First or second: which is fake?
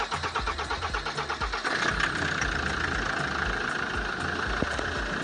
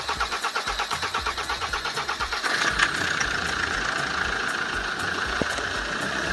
second